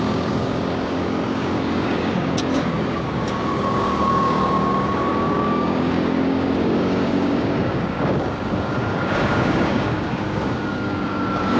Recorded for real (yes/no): no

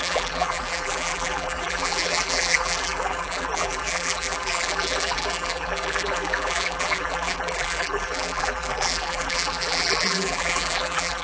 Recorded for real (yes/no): no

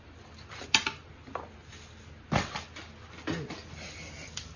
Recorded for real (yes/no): yes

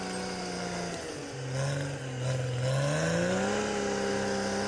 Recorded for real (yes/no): yes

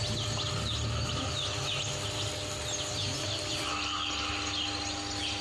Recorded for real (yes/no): yes